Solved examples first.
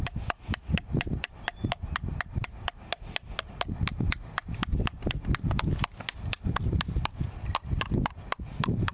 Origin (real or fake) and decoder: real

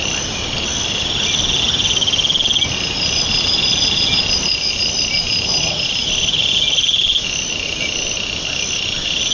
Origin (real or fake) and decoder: real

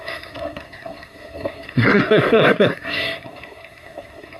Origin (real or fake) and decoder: fake, codec, SNAC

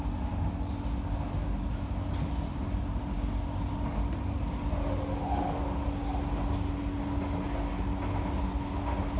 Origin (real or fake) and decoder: real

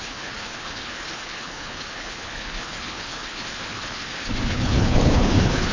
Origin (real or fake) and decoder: fake, codec, HILCodec